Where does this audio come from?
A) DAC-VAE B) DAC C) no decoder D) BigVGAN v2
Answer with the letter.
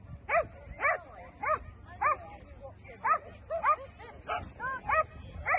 C